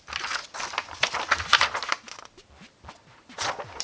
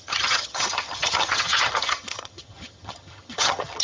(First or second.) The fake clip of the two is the second